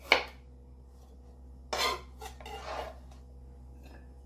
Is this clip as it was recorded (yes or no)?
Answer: yes